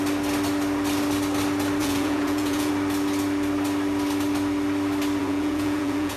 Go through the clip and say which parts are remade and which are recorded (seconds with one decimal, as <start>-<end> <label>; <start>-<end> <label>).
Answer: 0.0-1.8 recorded; 1.8-2.7 remade; 2.7-5.2 recorded; 5.2-6.2 remade